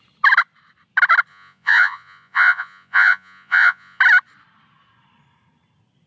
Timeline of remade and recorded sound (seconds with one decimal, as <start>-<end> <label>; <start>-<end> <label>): 0.0-1.3 recorded; 1.3-4.0 remade; 4.0-6.1 recorded